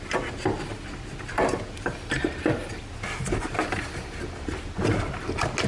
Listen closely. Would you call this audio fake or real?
real